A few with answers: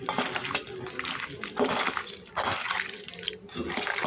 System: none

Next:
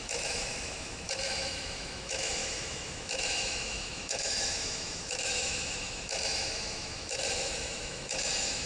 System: autoencoder, DAC-VAE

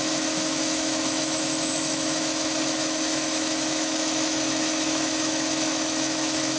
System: autoencoder, DAC-VAE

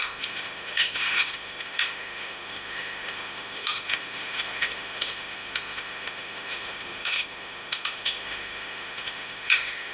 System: autoencoder, DAC-VAE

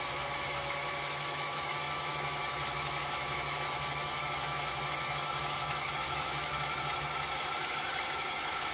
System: autoencoder, DAC-VAE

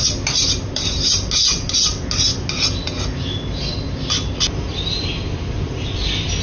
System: none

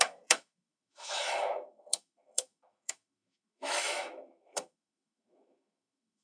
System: autoencoder, DAC-VAE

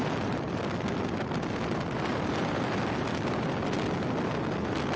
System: none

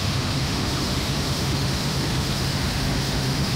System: autoencoder, DAC-VAE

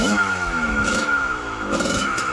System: autoencoder, DAC-VAE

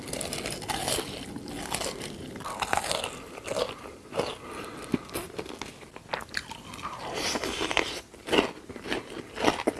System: none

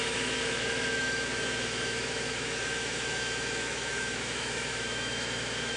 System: autoencoder, DAC-VAE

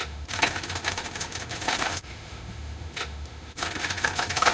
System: autoencoder, DAC-VAE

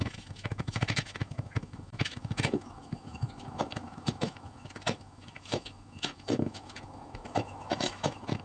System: autoencoder, DAC-VAE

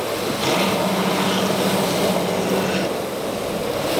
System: none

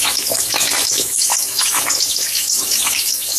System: autoencoder, DAC-VAE